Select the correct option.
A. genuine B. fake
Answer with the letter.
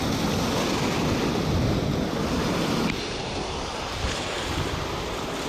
A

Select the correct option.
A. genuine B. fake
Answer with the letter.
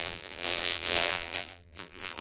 B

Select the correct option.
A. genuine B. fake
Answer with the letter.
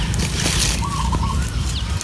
A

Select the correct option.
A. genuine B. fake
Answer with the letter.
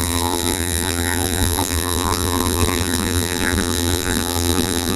B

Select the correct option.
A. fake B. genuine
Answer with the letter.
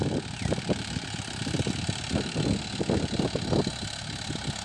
B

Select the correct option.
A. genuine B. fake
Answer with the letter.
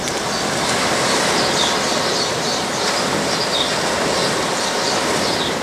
A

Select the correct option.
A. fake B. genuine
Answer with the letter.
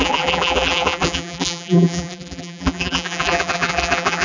A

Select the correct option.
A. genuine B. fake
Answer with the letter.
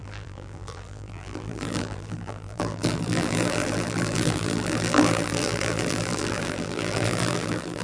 B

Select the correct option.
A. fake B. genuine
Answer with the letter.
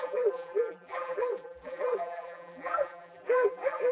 A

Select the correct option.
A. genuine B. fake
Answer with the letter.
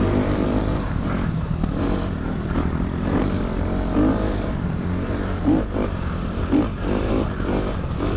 B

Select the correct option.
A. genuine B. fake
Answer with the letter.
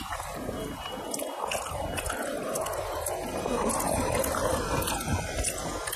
A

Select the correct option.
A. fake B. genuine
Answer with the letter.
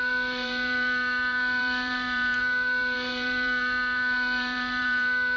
A